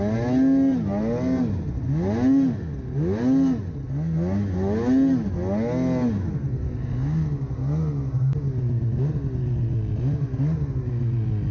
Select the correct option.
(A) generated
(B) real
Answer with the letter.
B